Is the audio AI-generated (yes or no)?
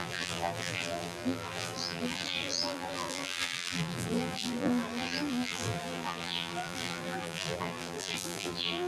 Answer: yes